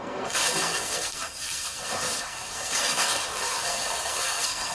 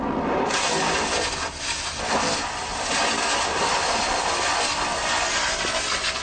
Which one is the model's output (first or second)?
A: first